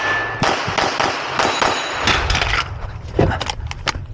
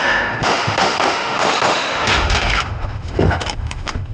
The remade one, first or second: second